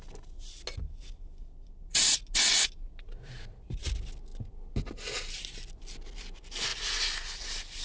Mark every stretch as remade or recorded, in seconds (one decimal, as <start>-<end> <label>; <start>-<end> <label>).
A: 0.0-7.8 recorded